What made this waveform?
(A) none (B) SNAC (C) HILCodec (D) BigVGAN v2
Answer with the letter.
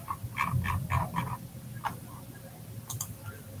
A